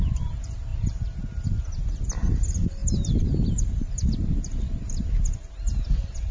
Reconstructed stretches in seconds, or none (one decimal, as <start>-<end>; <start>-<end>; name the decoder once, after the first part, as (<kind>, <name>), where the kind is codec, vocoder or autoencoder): none